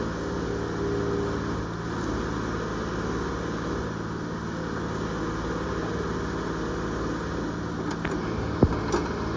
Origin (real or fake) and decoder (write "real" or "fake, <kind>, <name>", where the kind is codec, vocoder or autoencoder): real